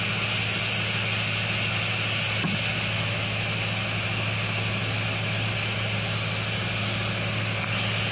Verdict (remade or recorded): recorded